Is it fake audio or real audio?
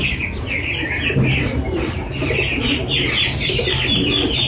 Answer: fake